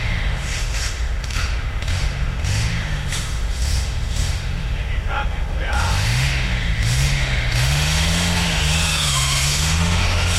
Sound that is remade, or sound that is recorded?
remade